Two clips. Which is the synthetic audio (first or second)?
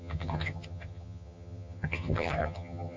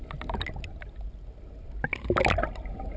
first